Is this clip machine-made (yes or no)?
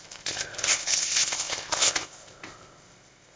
yes